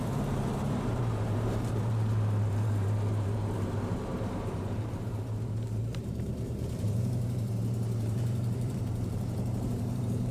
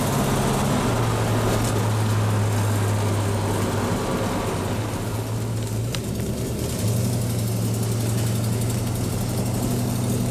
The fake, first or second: first